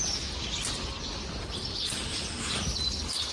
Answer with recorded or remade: recorded